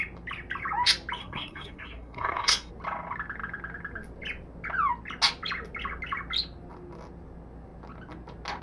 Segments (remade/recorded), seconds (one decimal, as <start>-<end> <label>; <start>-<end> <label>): 0.0-1.2 recorded; 1.2-2.7 remade; 2.7-8.6 recorded